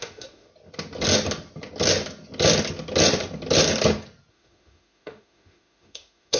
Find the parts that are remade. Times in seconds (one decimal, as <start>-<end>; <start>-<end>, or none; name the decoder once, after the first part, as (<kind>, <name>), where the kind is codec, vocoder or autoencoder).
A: 0.0-0.5 (autoencoder, DAC-VAE); 4.3-6.4